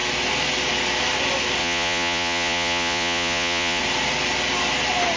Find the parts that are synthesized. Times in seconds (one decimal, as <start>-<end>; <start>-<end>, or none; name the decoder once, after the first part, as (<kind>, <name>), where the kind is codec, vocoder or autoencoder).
1.6-3.8 (vocoder, Vocos)